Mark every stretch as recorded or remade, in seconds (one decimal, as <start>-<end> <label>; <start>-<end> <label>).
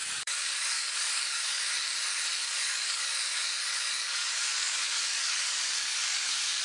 0.0-1.6 remade; 1.6-2.4 recorded; 2.4-6.6 remade